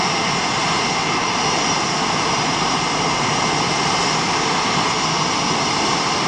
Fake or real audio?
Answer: real